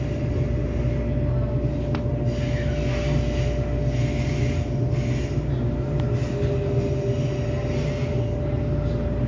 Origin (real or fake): real